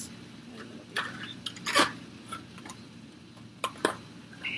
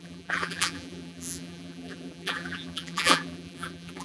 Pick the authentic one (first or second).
first